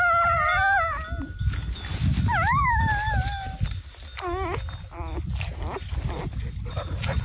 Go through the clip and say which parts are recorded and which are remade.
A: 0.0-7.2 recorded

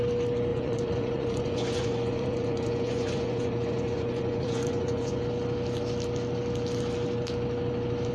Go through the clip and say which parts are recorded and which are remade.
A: 0.0-0.5 recorded; 0.5-5.2 remade; 5.2-8.1 recorded

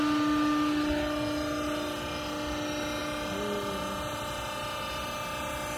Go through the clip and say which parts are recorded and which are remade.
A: 0.0-5.8 recorded

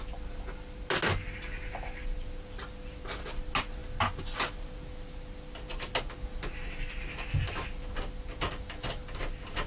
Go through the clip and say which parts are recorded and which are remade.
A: 0.0-9.7 recorded

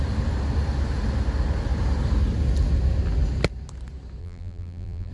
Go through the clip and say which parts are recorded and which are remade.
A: 0.0-4.2 recorded; 4.2-5.1 remade

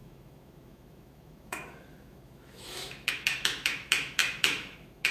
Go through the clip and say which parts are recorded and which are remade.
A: 0.0-5.1 remade

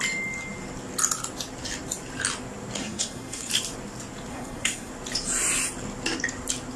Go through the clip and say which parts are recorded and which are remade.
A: 0.0-2.8 recorded; 2.8-3.5 remade; 3.5-4.3 recorded; 4.3-4.9 remade; 4.9-6.8 recorded

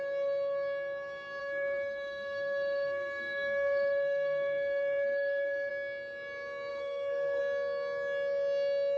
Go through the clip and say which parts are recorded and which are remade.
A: 0.0-1.4 recorded; 1.4-5.7 remade; 5.7-6.7 recorded; 6.7-7.4 remade; 7.4-9.0 recorded